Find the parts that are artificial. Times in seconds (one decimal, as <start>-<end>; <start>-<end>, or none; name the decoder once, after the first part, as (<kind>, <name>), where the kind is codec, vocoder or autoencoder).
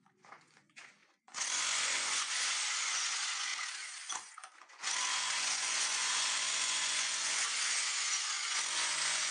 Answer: 0.0-9.3 (vocoder, Vocos)